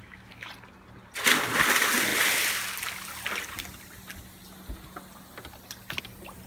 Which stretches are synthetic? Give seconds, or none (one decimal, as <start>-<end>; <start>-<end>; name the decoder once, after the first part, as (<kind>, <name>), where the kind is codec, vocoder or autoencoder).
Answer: 0.0-0.5 (autoencoder, DAC-VAE)